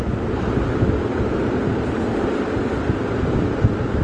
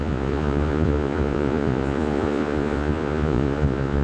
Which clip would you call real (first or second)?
first